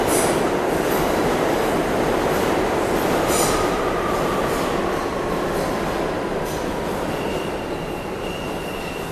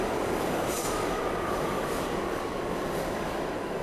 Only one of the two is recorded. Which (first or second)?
first